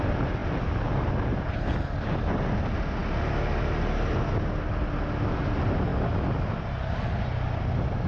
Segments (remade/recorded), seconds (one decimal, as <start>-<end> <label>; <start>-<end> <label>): 0.0-8.1 recorded